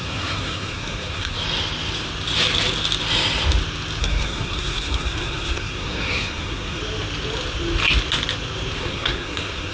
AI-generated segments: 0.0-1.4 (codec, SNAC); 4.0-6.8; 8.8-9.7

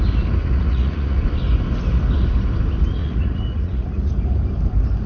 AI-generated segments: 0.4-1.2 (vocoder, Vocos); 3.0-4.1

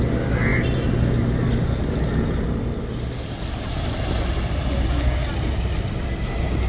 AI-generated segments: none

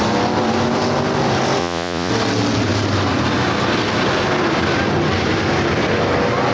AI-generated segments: 1.6-2.1 (vocoder, Vocos)

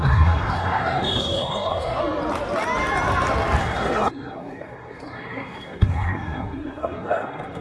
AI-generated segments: 0.0-2.0 (codec, SNAC); 3.6-7.6